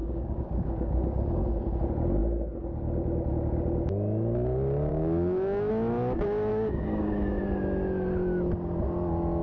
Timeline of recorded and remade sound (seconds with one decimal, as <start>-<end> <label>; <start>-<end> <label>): 0.0-1.6 remade; 1.6-4.9 recorded; 4.9-5.7 remade; 5.7-6.5 recorded; 6.5-7.4 remade; 7.4-9.4 recorded